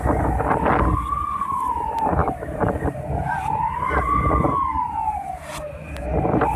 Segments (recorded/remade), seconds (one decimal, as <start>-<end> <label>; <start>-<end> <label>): 0.0-6.6 recorded

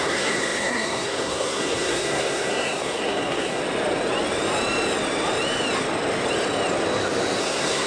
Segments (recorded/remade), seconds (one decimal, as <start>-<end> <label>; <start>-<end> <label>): 0.0-3.6 remade; 3.6-7.4 recorded; 7.4-7.9 remade

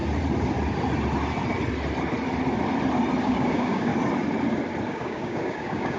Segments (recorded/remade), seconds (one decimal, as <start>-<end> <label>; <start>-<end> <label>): 0.0-3.2 recorded; 3.2-3.9 remade; 3.9-4.9 recorded; 4.9-6.0 remade

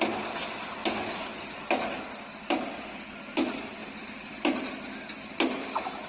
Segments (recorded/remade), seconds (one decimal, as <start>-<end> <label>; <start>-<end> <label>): 0.0-6.1 recorded

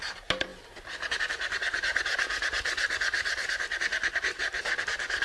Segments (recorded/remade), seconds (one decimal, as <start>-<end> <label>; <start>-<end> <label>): 0.0-5.2 recorded

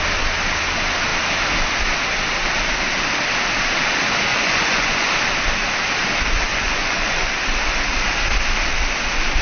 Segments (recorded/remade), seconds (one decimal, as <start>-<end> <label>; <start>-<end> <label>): 0.0-4.3 recorded; 4.3-5.1 remade; 5.1-6.5 recorded; 6.5-7.3 remade; 7.3-9.4 recorded

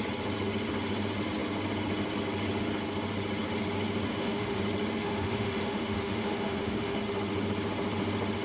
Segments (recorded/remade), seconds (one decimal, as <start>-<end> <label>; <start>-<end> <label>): 0.0-4.1 recorded; 4.1-4.6 remade; 4.6-5.0 recorded; 5.0-7.0 remade; 7.0-8.4 recorded